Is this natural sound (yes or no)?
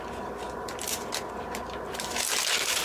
yes